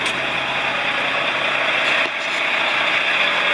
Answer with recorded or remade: recorded